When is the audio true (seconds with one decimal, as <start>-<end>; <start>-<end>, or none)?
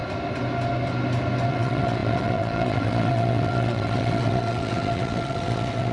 0.0-1.5